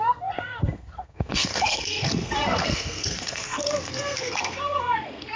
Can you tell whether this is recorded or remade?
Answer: remade